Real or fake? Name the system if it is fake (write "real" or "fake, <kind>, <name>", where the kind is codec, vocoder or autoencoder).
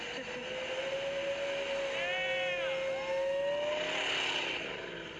real